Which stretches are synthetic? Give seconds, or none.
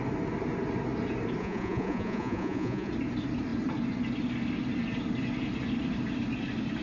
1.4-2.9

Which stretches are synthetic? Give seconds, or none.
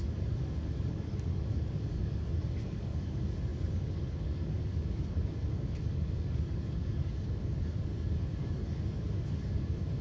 0.0-10.0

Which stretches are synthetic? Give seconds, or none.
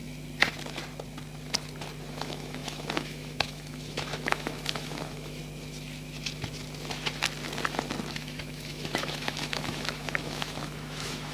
2.1-5.4; 8.1-11.3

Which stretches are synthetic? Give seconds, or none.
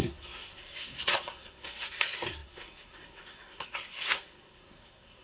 0.0-5.2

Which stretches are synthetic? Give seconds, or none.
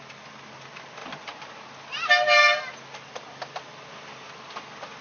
none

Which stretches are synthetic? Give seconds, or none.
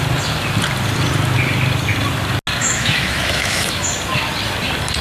2.6-3.9